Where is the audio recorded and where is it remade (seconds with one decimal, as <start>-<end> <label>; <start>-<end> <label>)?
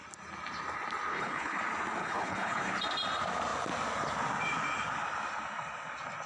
0.0-1.1 recorded; 1.1-1.6 remade; 1.6-2.0 recorded; 2.0-2.7 remade; 2.7-6.3 recorded